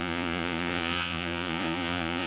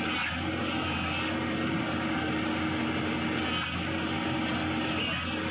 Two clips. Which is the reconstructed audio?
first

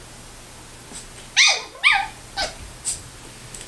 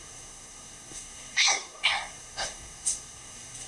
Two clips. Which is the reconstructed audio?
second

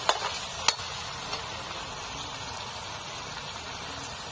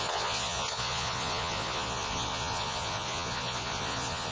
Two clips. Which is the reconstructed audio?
second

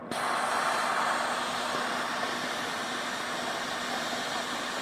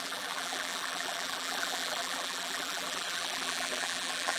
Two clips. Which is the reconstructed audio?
second